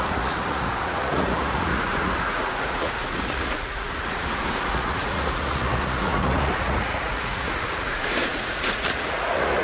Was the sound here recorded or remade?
remade